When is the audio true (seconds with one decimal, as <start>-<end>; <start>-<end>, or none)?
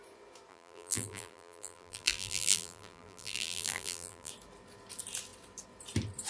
0.0-0.5; 4.3-6.3